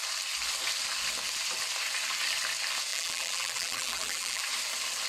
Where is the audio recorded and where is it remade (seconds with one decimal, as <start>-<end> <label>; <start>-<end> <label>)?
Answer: 0.0-2.9 recorded; 2.9-4.4 remade; 4.4-5.1 recorded